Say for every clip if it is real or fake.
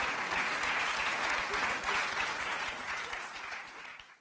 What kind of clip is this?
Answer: fake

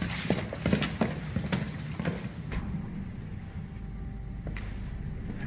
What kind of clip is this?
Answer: real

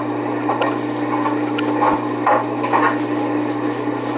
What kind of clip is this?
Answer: real